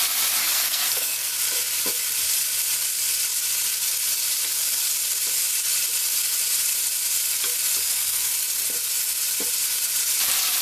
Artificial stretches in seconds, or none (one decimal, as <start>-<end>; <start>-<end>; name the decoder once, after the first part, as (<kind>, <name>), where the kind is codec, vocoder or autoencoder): 0.4-1.3 (codec, SNAC); 7.8-8.3